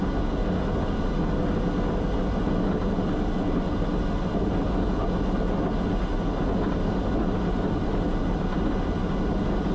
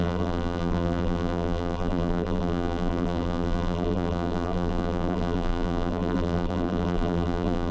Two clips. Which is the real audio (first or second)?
first